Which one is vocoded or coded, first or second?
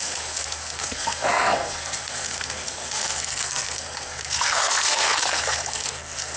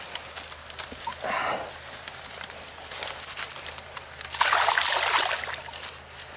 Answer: first